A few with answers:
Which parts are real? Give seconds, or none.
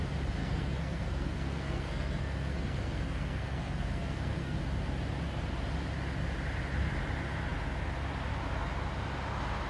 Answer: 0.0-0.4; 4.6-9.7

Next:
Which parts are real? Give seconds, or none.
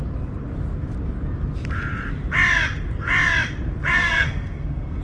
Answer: 0.0-3.9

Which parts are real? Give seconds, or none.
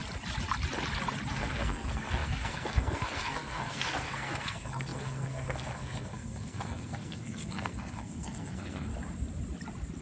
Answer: 0.0-1.3; 8.9-10.0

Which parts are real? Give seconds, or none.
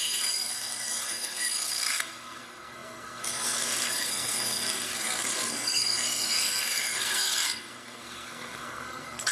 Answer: none